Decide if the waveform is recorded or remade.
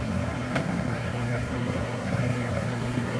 remade